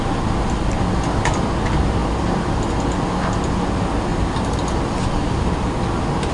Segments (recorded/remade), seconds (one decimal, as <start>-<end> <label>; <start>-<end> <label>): 0.0-4.1 recorded; 4.1-4.7 remade; 4.7-6.3 recorded